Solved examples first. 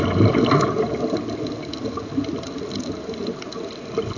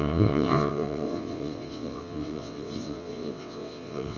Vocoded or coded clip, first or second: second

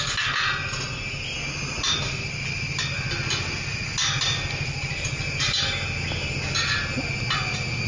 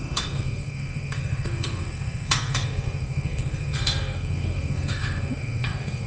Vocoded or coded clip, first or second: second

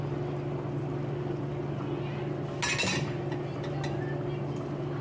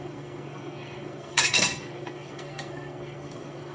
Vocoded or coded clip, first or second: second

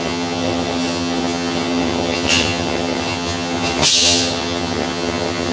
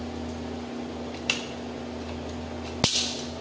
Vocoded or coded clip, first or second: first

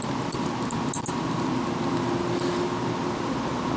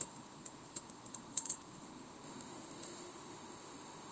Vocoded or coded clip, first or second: second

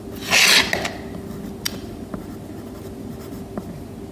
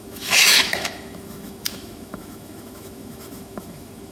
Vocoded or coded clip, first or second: second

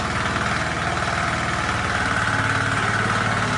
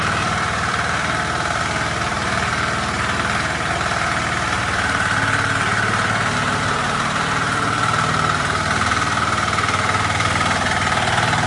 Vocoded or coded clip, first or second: second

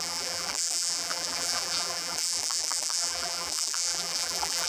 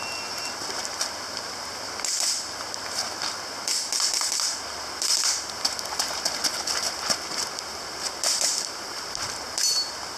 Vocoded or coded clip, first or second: first